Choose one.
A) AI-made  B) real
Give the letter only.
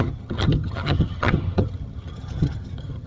A